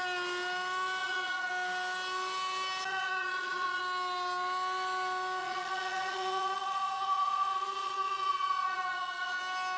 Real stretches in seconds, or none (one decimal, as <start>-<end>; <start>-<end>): 0.0-1.0; 1.5-2.9; 3.8-5.4; 9.4-9.8